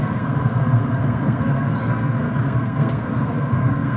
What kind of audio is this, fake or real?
fake